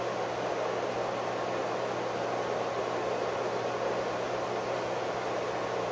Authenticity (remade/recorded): recorded